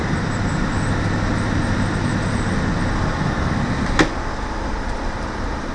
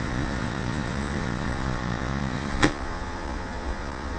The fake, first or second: second